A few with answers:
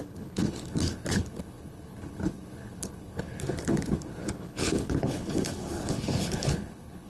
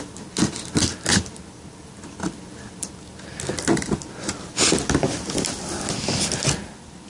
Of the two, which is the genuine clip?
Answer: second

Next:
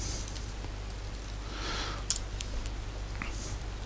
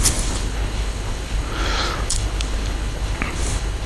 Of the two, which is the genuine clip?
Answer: first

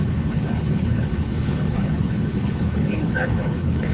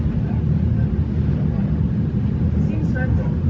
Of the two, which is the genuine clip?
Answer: second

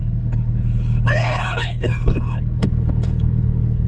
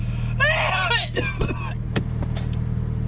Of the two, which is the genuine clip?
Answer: second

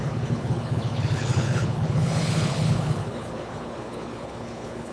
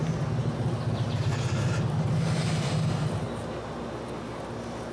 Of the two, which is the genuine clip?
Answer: second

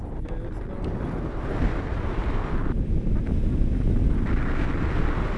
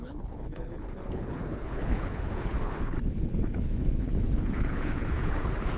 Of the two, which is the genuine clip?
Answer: first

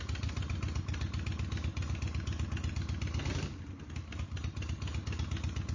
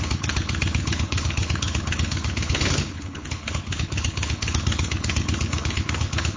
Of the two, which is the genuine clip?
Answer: first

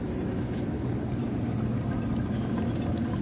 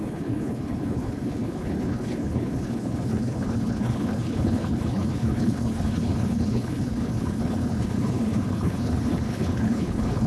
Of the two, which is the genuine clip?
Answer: first